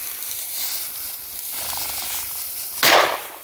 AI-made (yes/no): no